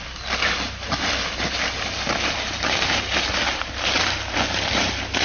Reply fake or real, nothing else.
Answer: real